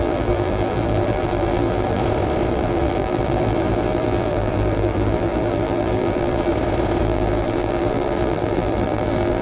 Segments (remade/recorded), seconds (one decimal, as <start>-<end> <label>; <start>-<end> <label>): 0.0-2.0 remade; 2.0-2.5 recorded; 2.5-6.5 remade; 6.5-7.0 recorded; 7.0-9.4 remade

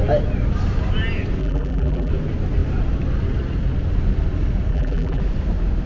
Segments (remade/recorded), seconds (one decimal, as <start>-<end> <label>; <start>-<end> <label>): 0.0-1.4 recorded; 1.4-2.1 remade; 2.1-4.7 recorded; 4.7-5.2 remade; 5.2-5.9 recorded

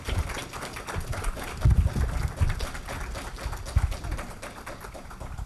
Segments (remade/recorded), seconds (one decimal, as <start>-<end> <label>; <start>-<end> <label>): 0.0-5.5 recorded